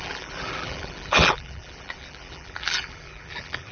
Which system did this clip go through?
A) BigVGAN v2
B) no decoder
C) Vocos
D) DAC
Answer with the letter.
A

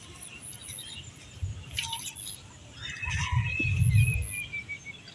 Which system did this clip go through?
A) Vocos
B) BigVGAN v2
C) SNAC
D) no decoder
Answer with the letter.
D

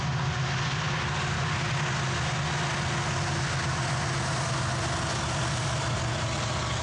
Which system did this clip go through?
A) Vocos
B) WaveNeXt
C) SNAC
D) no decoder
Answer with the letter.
D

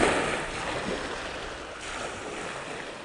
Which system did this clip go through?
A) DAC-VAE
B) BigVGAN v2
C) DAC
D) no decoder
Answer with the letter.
D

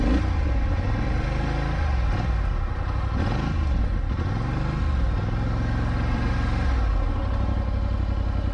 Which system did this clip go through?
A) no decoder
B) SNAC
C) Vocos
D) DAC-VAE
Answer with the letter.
A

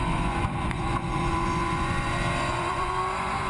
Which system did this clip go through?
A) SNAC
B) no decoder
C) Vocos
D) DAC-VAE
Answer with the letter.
C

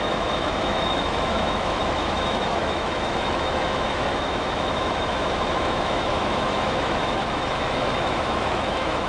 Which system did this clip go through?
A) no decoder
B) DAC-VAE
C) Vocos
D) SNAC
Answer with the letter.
B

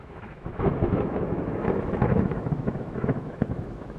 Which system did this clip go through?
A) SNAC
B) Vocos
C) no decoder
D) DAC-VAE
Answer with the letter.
D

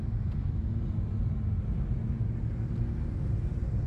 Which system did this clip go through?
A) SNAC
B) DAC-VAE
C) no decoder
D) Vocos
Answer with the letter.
C